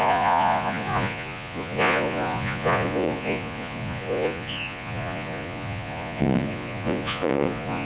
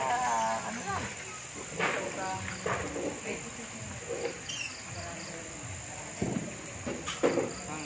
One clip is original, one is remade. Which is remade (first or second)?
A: first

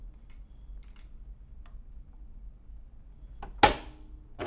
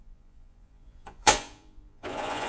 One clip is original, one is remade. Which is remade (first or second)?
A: second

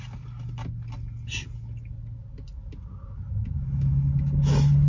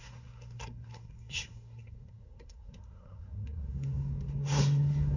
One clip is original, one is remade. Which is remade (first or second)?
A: second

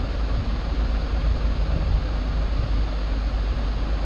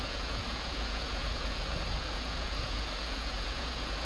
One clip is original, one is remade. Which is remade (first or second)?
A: second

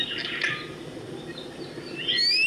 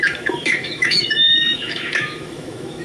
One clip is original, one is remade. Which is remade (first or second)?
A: second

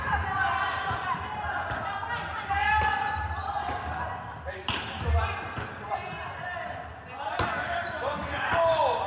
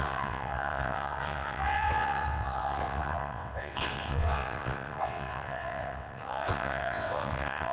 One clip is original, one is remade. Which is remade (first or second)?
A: second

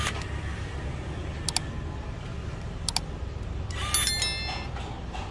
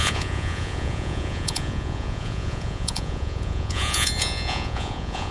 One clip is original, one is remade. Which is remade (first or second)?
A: second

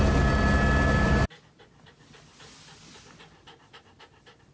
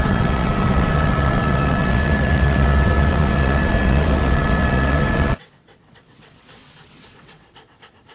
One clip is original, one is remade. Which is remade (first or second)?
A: second